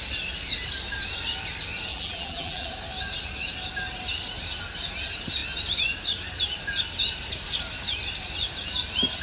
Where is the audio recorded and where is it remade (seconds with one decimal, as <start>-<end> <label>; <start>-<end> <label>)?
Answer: 0.0-1.9 recorded; 1.9-2.7 remade; 2.7-9.2 recorded